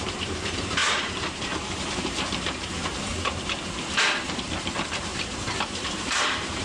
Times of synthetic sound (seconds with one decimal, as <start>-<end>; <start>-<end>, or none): 0.0-3.1; 4.3-5.1; 5.9-6.6